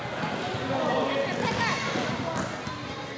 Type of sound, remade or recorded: recorded